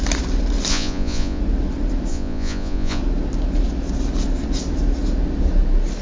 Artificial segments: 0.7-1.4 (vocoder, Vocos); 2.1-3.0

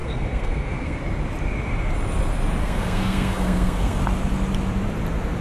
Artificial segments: 0.0-1.0 (codec, SNAC); 2.6-4.0

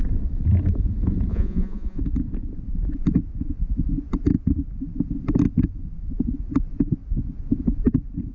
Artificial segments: 1.3-2.0 (vocoder, Vocos)